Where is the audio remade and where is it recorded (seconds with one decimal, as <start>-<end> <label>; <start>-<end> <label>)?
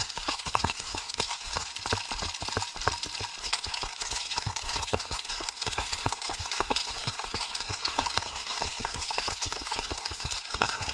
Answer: 0.0-1.7 remade; 1.7-3.4 recorded; 3.4-10.9 remade